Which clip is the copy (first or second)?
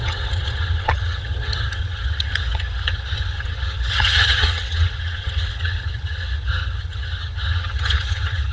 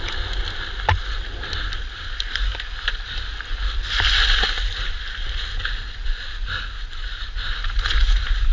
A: first